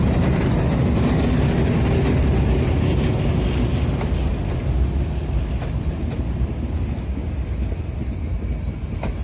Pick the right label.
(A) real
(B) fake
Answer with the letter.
A